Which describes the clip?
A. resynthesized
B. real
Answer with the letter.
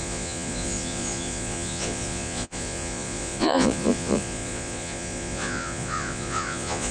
A